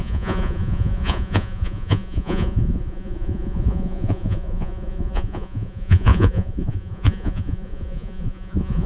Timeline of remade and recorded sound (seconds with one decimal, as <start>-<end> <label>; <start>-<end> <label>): 0.0-8.9 remade